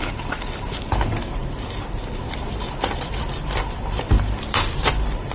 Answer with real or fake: fake